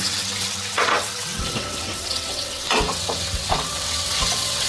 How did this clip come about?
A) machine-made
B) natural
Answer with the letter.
A